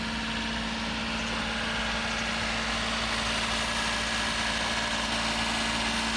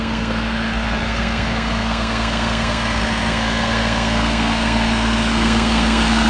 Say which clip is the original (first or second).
first